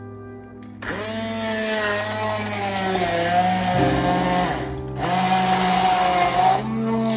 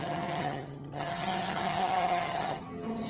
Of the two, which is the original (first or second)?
first